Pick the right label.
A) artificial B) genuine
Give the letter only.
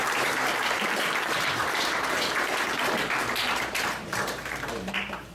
A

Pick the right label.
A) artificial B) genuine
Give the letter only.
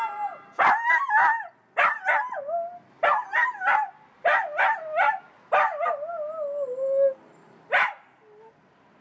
B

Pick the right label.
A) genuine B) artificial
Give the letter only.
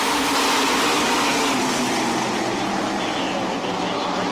A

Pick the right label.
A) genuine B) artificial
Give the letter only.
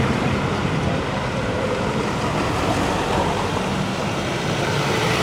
B